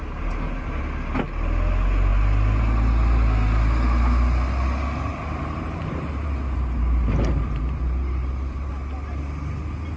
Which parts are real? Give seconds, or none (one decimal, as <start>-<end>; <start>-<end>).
0.0-5.1; 8.7-10.0